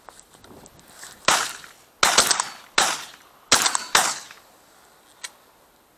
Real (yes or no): yes